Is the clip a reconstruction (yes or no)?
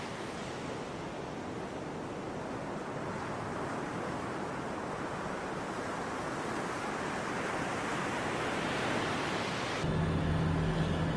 no